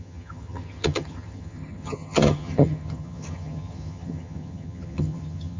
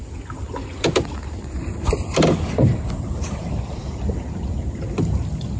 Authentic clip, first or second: second